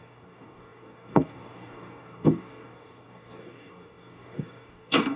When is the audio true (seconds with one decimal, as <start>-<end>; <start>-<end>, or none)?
none